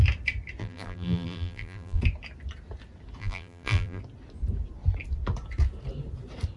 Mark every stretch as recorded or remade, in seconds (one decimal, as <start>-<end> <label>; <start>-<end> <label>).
0.0-0.6 recorded; 0.6-2.0 remade; 2.0-3.2 recorded; 3.2-4.0 remade; 4.0-6.6 recorded